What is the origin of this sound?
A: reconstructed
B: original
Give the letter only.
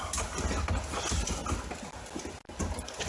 B